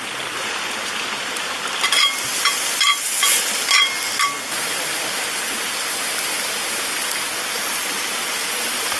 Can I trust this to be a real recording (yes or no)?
yes